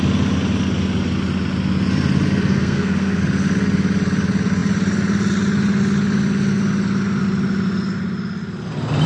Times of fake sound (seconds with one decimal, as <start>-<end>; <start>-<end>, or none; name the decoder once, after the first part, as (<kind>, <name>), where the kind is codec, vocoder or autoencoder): 2.5-3.2 (codec, SNAC)